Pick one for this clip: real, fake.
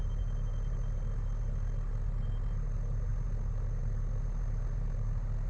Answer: real